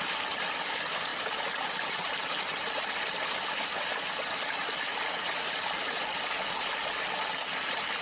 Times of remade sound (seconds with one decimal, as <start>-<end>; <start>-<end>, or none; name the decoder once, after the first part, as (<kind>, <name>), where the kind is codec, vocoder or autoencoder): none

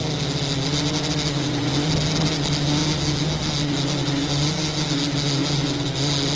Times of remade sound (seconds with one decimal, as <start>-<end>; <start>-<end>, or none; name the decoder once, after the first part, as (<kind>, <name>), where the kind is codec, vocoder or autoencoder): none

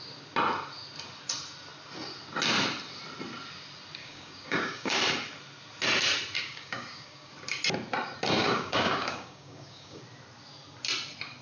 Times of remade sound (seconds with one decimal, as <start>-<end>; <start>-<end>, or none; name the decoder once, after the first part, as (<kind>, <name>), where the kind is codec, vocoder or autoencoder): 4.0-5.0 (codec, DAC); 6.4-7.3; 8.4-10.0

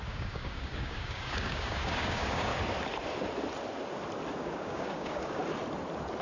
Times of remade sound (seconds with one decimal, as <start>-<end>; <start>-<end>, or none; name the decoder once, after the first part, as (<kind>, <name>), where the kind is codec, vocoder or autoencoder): 0.0-2.5 (codec, DAC); 4.4-5.4